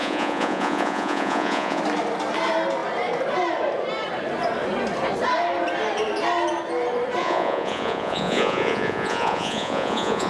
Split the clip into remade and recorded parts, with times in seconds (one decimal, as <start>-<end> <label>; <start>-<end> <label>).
0.0-1.8 remade; 1.8-7.2 recorded; 7.2-10.3 remade